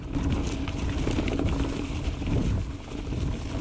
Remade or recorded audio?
recorded